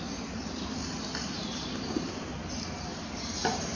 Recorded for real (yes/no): yes